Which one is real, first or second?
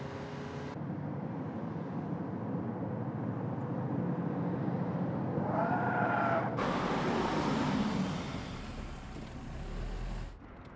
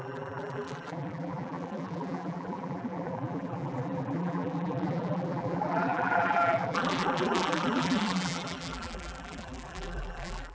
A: first